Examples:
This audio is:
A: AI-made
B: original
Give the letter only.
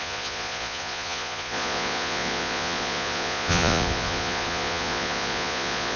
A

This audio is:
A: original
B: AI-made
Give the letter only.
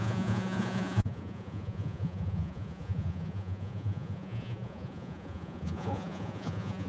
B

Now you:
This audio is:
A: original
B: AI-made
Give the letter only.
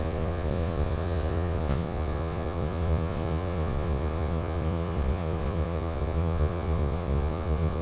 B